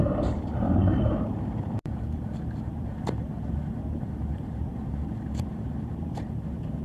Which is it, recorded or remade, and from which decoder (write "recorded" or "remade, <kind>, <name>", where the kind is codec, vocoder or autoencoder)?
remade, vocoder, BigVGAN v2